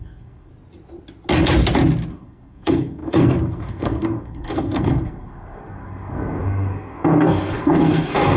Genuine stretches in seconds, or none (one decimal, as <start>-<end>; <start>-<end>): 0.5-2.1